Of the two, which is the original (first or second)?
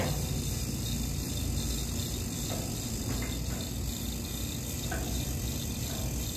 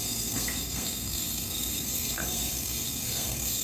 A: first